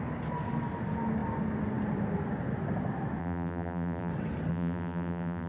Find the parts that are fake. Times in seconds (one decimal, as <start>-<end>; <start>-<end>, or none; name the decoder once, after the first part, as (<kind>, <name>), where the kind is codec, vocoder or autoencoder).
3.2-4.1 (vocoder, BigVGAN v2); 4.5-5.5